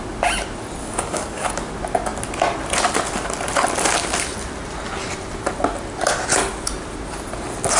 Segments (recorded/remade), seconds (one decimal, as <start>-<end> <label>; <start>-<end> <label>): 0.0-0.8 recorded; 0.8-1.5 remade; 1.5-7.8 recorded